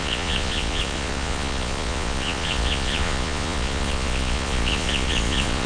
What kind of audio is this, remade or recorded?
remade